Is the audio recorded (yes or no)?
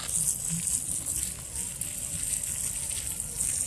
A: yes